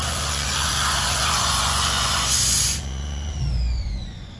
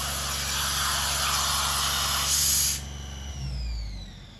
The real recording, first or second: second